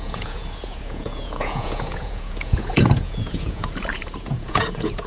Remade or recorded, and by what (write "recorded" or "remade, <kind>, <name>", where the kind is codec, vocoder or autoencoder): remade, vocoder, Vocos